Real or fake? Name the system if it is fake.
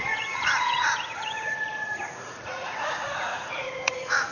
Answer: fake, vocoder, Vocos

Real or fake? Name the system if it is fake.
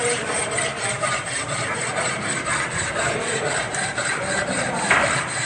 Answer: fake, vocoder, BigVGAN v2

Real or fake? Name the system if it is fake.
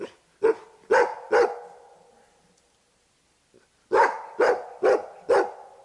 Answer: real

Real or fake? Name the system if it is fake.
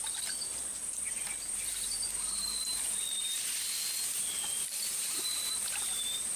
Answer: real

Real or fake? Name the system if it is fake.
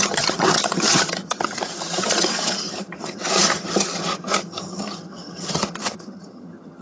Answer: fake, vocoder, HiFi-GAN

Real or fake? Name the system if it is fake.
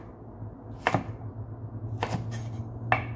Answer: real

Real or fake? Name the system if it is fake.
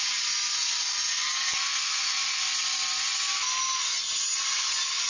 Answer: real